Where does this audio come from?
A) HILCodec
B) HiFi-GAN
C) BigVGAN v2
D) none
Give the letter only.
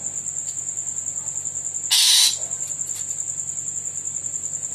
D